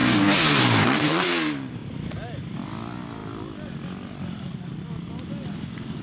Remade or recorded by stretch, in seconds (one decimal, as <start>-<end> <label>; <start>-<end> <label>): 0.0-6.0 recorded